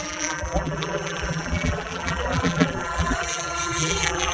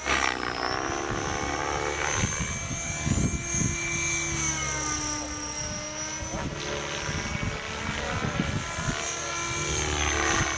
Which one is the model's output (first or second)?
first